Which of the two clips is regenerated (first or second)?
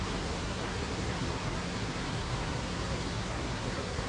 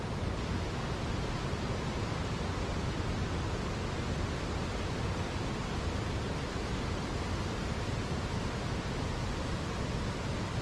first